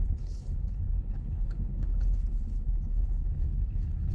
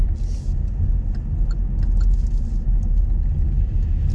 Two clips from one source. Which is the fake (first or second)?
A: first